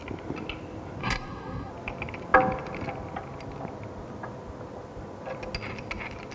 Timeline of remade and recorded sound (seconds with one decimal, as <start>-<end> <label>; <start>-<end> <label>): 0.0-1.0 recorded; 1.0-1.7 remade; 1.7-6.3 recorded